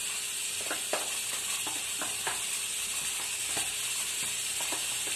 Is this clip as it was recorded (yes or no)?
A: yes